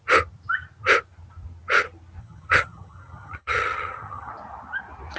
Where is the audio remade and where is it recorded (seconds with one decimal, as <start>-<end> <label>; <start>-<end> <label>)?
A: 0.0-2.2 recorded; 2.2-4.3 remade; 4.3-5.2 recorded